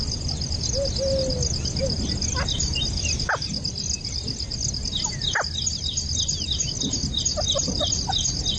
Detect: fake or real real